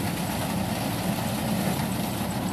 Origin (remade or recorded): recorded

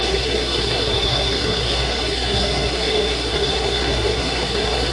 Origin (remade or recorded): remade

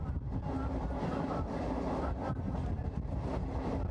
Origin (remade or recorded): recorded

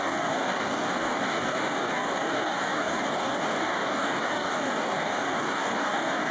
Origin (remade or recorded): remade